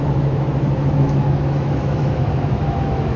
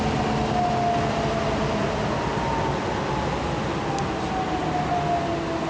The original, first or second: second